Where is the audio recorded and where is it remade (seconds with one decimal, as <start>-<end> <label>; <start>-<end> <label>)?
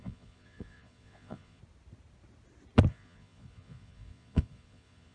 0.0-1.6 remade; 1.6-2.9 recorded; 2.9-5.1 remade